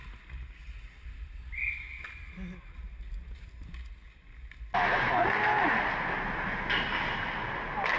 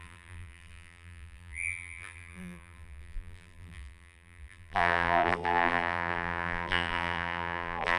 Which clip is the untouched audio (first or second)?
first